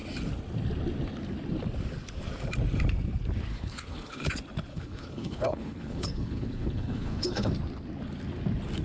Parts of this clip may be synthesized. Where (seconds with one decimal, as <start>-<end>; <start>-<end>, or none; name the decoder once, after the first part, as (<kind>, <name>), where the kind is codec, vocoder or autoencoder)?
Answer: 3.5-4.3 (codec, HILCodec); 4.7-7.5